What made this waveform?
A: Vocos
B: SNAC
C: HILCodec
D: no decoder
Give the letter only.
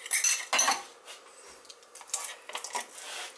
D